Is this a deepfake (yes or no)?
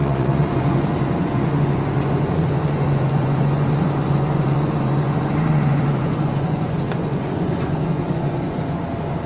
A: yes